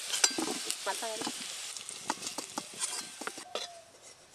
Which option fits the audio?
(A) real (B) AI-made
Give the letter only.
A